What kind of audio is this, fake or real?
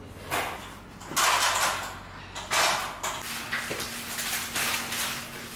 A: real